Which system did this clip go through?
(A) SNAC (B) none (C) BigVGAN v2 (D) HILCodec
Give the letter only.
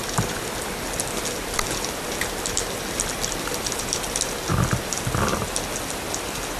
B